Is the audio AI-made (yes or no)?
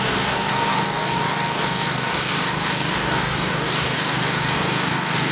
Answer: yes